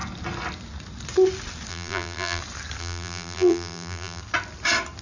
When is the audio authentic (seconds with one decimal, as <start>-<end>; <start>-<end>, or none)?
0.0-1.7; 2.4-2.8; 4.2-5.0